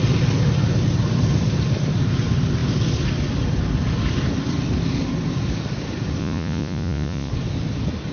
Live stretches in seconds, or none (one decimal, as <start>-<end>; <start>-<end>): 0.0-6.2; 7.3-8.1